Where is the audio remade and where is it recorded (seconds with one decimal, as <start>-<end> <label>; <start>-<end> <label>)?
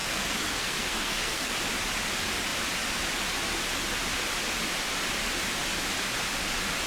0.0-1.5 remade; 1.5-6.9 recorded